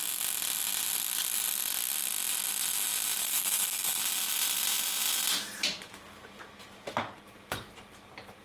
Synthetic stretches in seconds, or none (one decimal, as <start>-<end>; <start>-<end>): 3.2-4.0